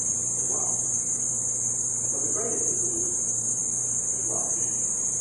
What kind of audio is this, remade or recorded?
remade